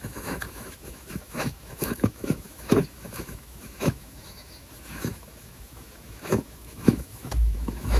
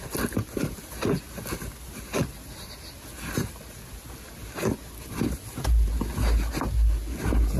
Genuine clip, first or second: second